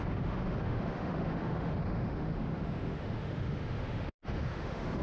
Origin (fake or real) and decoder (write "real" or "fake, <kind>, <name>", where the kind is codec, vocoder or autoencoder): fake, autoencoder, DAC-VAE